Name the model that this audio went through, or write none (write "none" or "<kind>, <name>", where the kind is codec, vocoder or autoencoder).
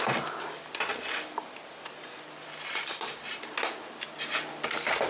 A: none